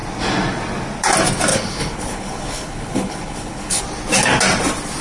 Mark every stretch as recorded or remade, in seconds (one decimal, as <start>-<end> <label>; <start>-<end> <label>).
0.0-1.5 recorded; 1.5-3.8 remade; 3.8-5.0 recorded